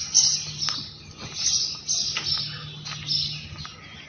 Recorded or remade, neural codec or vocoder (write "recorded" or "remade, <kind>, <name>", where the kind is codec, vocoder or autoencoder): recorded